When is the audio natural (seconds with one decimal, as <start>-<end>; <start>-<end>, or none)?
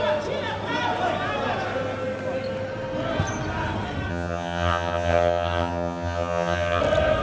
0.0-4.1; 6.8-7.2